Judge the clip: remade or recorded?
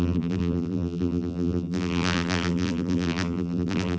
remade